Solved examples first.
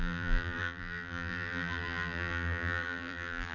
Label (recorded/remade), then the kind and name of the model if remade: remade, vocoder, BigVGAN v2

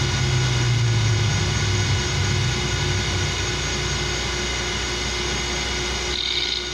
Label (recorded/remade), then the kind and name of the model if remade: recorded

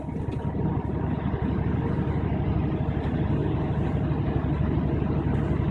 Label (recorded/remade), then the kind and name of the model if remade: recorded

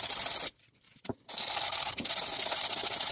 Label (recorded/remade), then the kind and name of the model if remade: recorded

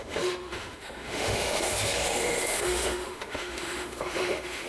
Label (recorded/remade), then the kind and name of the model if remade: remade, autoencoder, DAC-VAE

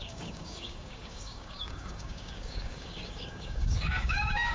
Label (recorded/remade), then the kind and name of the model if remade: remade, codec, DAC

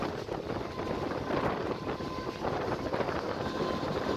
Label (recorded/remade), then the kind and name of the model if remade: recorded